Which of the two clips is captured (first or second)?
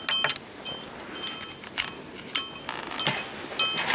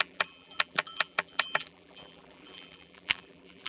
first